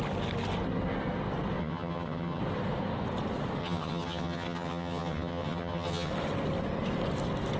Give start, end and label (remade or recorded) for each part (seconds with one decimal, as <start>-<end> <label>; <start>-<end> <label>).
0.0-1.6 recorded; 1.6-2.4 remade; 2.4-3.6 recorded; 3.6-6.1 remade; 6.1-7.6 recorded